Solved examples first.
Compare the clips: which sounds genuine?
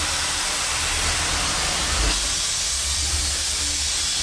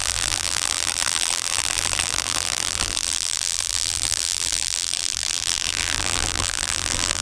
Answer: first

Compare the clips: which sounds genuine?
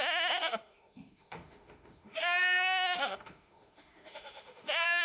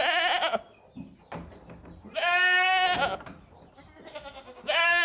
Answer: second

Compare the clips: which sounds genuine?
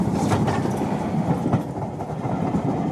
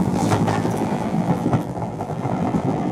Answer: first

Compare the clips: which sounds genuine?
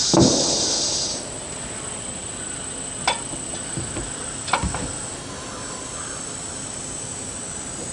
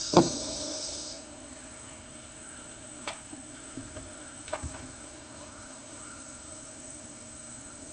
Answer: first